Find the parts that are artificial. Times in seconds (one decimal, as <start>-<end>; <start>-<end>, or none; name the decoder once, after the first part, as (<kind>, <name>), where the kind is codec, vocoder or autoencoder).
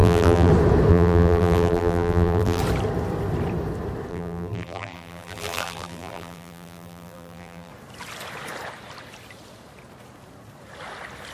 0.0-0.5 (vocoder, BigVGAN v2); 0.9-2.6; 4.1-7.7